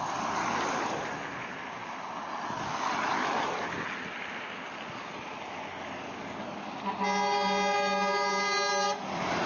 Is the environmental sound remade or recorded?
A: recorded